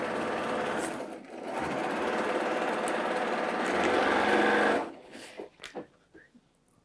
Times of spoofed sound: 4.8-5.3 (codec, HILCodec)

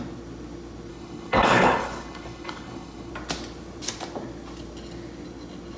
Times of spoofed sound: 0.9-3.1 (codec, HILCodec)